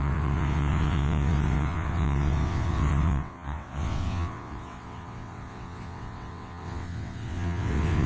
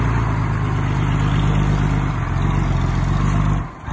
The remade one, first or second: first